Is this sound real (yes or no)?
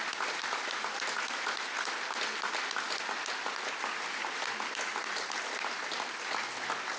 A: yes